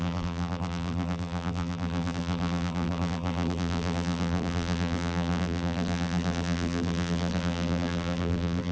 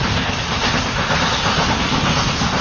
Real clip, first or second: second